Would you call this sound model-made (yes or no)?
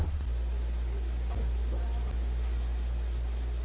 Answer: no